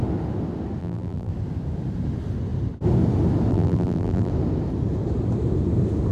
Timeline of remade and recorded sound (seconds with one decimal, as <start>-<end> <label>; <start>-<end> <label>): 0.0-0.8 recorded; 0.8-1.3 remade; 1.3-3.5 recorded; 3.5-4.3 remade; 4.3-6.1 recorded